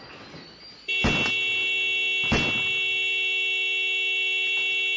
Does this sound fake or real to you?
real